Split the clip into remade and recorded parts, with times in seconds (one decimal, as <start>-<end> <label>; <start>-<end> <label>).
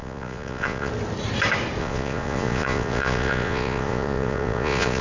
0.0-0.9 remade; 0.9-1.8 recorded; 1.8-5.0 remade